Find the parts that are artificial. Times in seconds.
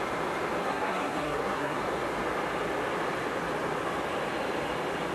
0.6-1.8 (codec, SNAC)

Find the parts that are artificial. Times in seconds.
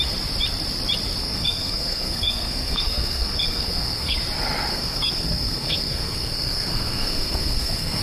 1.2-4.2 (codec, SNAC); 4.7-8.0